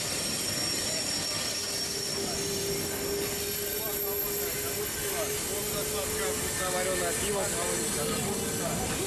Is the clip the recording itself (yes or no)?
yes